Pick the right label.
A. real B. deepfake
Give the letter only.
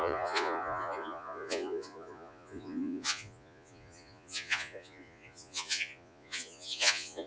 B